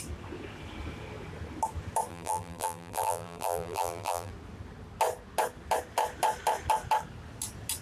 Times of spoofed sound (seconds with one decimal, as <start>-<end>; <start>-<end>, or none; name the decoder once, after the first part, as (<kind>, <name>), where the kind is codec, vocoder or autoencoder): 2.1-4.3 (vocoder, BigVGAN v2)